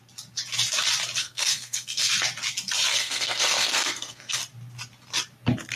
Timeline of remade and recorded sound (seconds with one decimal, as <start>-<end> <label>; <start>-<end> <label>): 0.0-1.2 recorded; 1.2-2.1 remade; 2.1-2.9 recorded; 2.9-4.4 remade; 4.4-5.8 recorded